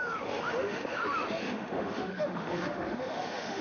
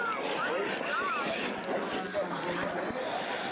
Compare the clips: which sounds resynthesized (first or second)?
first